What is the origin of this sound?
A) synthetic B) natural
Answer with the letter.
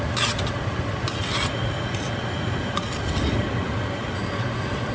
B